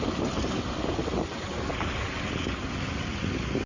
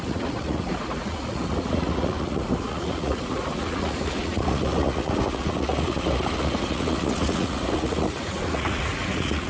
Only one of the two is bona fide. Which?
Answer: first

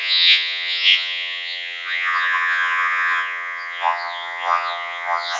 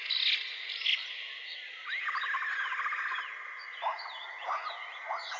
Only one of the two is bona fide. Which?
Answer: second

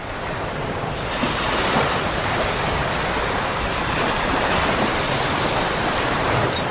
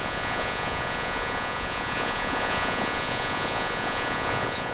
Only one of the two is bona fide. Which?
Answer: first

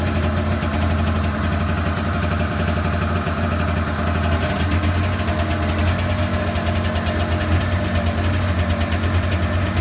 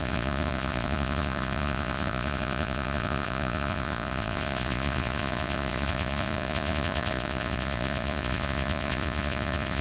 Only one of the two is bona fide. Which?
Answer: first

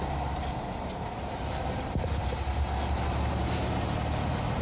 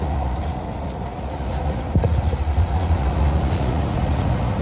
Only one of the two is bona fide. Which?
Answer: first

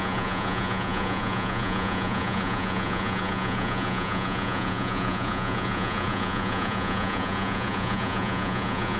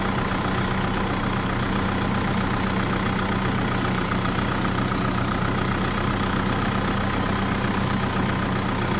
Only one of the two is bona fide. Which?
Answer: second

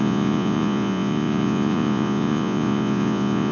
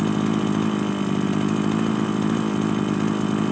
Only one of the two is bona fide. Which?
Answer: second